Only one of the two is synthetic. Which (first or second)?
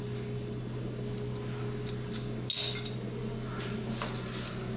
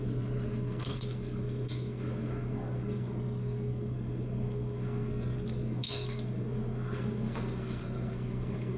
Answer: second